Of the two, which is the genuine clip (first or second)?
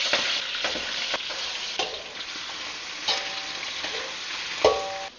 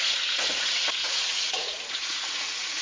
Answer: first